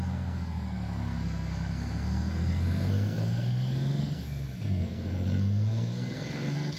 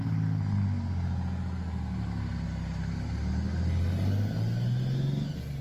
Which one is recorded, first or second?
second